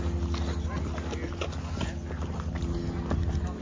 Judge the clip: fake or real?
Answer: real